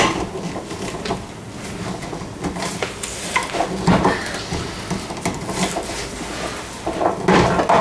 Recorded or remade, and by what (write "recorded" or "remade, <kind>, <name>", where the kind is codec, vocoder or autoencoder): recorded